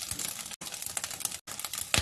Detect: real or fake real